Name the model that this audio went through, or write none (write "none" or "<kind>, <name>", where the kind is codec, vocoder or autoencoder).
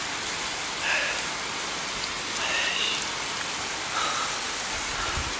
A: none